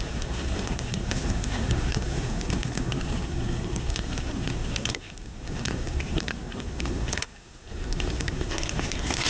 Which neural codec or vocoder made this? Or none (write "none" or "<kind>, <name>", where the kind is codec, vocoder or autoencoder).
codec, SNAC